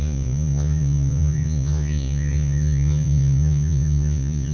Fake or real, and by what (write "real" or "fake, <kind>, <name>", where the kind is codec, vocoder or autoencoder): fake, vocoder, Vocos